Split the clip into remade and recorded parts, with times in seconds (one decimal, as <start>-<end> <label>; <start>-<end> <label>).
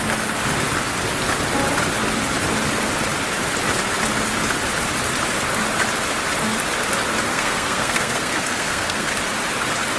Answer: 0.0-7.3 recorded; 7.3-9.1 remade; 9.1-10.0 recorded